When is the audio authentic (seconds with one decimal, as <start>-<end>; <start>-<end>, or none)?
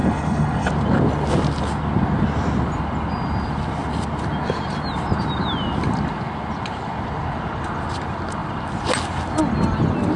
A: 0.7-10.2